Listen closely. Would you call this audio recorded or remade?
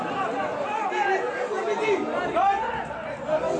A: recorded